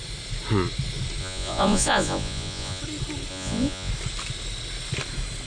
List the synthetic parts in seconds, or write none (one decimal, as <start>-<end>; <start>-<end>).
1.2-2.8; 3.3-3.9